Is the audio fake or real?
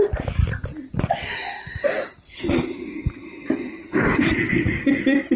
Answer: real